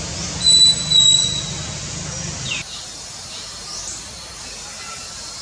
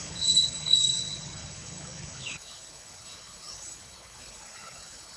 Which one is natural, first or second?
first